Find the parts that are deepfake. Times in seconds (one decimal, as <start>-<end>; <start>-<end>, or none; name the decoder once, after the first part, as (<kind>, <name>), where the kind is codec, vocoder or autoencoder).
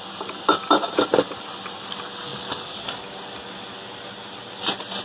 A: none